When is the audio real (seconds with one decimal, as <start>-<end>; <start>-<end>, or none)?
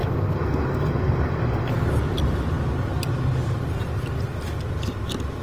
1.7-5.4